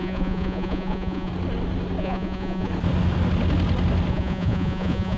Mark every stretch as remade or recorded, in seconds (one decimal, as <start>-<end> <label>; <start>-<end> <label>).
0.0-1.3 remade; 1.3-2.0 recorded; 2.0-2.7 remade; 2.7-4.1 recorded; 4.1-5.2 remade